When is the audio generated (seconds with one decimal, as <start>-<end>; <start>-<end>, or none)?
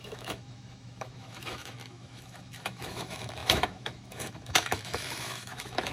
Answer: 0.0-5.9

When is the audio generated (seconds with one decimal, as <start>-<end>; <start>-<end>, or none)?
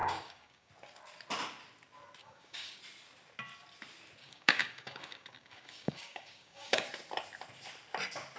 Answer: 0.0-0.7; 2.2-2.8; 4.2-6.9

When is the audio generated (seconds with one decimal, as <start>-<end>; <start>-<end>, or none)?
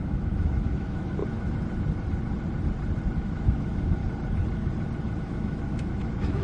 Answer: 0.0-1.2; 3.2-4.0; 5.2-6.4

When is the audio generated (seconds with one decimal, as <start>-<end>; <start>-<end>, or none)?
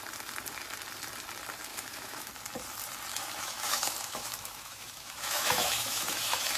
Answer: 1.7-2.3; 3.1-6.6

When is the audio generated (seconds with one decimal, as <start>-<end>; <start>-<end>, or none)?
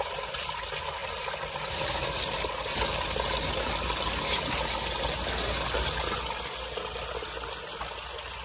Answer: none